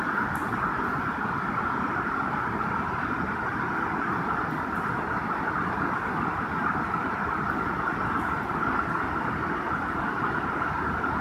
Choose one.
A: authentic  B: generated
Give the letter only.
A